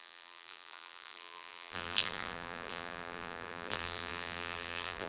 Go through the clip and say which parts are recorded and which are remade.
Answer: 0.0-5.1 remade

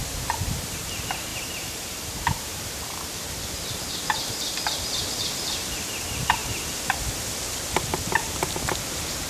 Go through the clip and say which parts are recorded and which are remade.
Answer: 0.0-1.3 recorded; 1.3-2.7 remade; 2.7-9.3 recorded

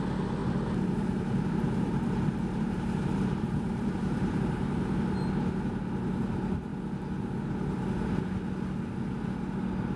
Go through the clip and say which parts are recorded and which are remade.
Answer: 0.0-0.4 recorded; 0.4-5.0 remade; 5.0-10.0 recorded

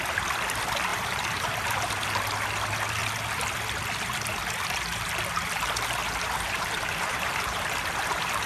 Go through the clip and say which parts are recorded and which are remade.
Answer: 0.0-0.9 recorded; 0.9-1.9 remade; 1.9-6.0 recorded; 6.0-7.6 remade; 7.6-8.5 recorded

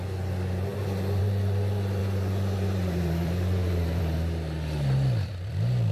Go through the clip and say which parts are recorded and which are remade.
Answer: 0.0-2.0 recorded; 2.0-4.0 remade; 4.0-5.9 recorded

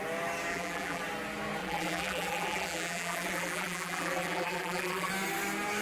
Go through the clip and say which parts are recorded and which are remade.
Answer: 0.0-0.5 recorded; 0.5-1.0 remade; 1.0-1.6 recorded; 1.6-5.1 remade; 5.1-5.8 recorded

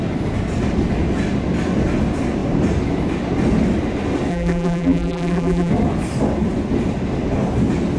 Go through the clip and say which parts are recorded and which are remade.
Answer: 0.0-4.3 recorded; 4.3-5.7 remade; 5.7-8.0 recorded